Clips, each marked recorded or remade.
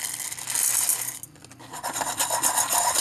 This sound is recorded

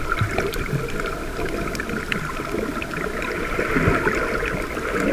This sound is recorded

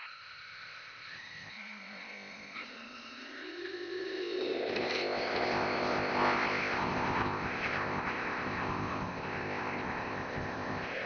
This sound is remade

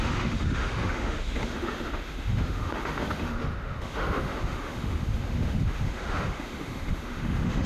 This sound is remade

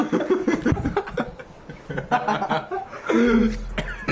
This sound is recorded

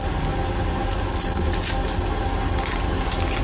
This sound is recorded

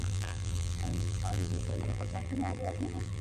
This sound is remade